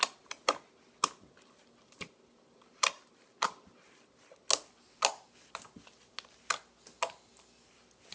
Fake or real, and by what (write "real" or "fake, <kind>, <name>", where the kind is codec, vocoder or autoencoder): real